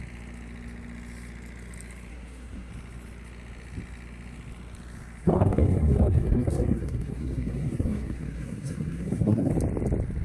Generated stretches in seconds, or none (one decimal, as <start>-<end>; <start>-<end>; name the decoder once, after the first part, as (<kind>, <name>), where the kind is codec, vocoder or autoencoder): 2.1-2.7 (codec, SNAC); 5.2-9.5